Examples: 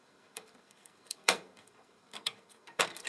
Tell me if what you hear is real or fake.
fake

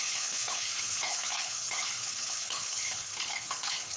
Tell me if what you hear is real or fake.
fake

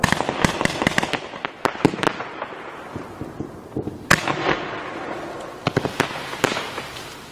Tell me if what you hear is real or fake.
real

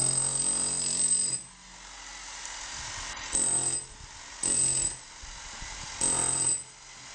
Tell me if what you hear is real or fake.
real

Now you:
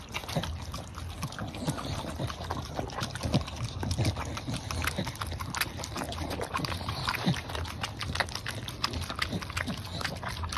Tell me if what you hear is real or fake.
real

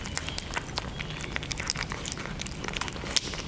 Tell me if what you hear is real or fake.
real